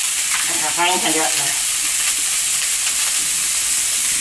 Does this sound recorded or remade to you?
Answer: recorded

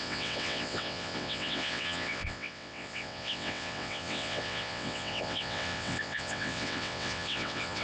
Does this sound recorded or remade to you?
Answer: remade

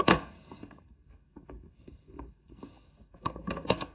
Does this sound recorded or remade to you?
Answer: remade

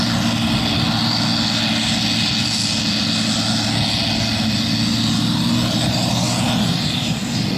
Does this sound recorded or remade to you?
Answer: recorded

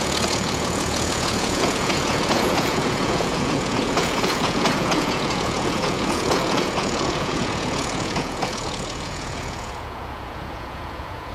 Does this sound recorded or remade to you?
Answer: remade